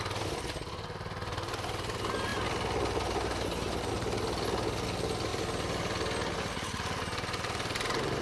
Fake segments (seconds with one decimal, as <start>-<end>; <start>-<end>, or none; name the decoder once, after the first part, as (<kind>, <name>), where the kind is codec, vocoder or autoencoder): none